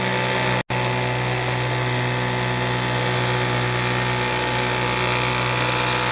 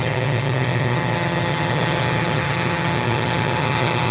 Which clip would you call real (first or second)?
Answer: first